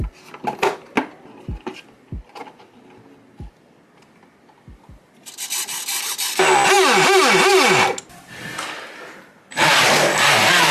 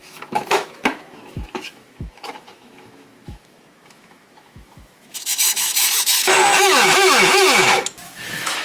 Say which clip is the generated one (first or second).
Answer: second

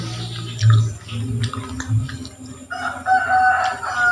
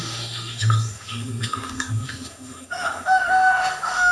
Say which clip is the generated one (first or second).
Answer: second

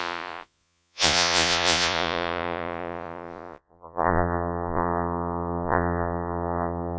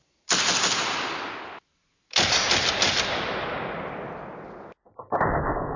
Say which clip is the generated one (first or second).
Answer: first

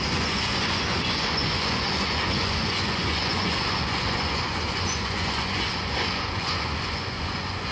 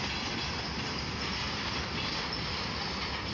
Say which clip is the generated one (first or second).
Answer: first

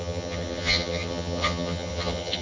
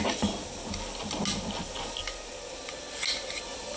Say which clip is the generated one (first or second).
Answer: first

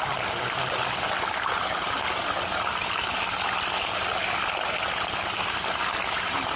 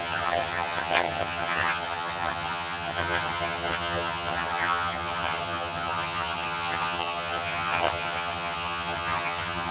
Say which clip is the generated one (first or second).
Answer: second